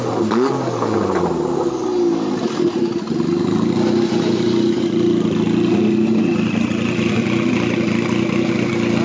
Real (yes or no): yes